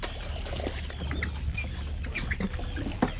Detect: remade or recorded recorded